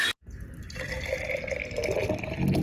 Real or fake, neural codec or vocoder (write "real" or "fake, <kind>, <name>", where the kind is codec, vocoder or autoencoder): real